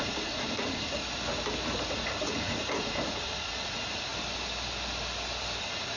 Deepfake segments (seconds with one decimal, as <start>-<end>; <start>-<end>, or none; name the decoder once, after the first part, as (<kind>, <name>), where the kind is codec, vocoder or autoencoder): 0.0-1.0 (vocoder, Vocos); 1.9-4.1; 5.6-6.0